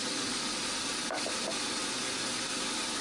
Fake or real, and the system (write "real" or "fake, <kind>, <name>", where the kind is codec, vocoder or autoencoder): real